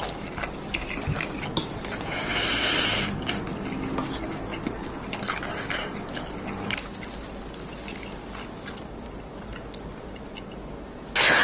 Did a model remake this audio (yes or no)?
no